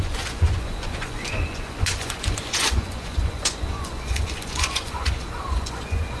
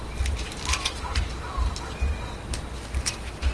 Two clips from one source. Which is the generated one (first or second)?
first